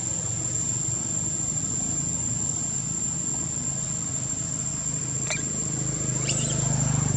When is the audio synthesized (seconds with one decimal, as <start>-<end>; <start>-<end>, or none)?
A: none